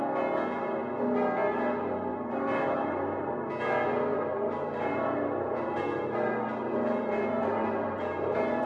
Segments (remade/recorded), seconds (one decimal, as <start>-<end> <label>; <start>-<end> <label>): 0.0-2.1 recorded; 2.1-3.5 remade; 3.5-4.1 recorded; 4.1-8.7 remade